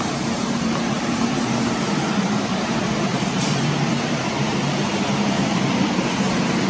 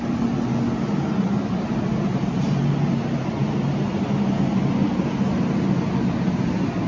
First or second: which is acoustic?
second